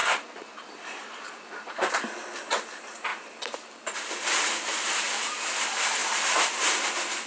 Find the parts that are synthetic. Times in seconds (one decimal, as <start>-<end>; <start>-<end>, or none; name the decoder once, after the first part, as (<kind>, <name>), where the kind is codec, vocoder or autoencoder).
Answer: 0.0-1.9 (vocoder, BigVGAN v2); 3.1-5.0; 6.0-7.3